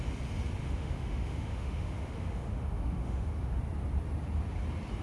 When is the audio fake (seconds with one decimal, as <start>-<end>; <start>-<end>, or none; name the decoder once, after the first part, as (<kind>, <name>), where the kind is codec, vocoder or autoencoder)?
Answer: 0.6-3.6 (autoencoder, DAC-VAE)